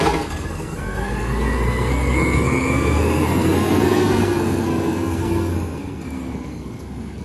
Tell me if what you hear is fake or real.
fake